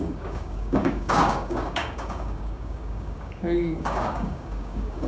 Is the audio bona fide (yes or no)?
no